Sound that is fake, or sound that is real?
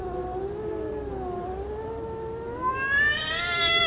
real